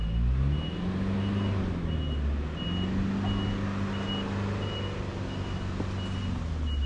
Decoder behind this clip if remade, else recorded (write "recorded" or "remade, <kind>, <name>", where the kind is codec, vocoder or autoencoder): recorded